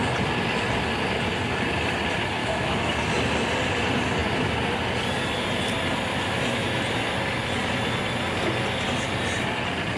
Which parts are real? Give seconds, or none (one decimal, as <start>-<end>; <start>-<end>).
0.0-2.4; 2.9-6.1; 6.8-10.0